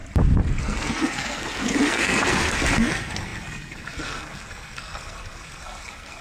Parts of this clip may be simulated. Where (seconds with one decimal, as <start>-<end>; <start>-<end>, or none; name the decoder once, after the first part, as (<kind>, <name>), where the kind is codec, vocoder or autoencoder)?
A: 0.6-6.2 (codec, SNAC)